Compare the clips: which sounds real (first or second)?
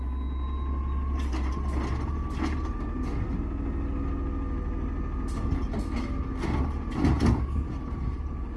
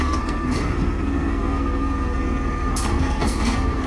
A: first